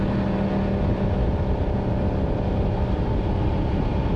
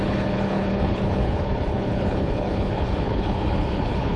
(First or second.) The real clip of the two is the first